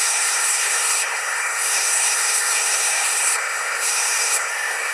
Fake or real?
fake